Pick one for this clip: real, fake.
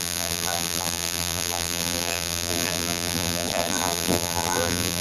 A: fake